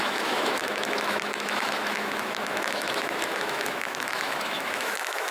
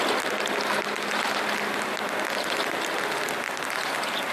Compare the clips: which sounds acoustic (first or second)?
second